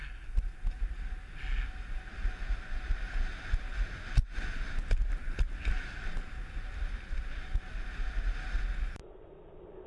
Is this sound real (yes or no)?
yes